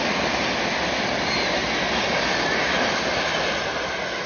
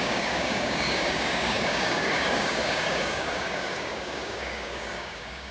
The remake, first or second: second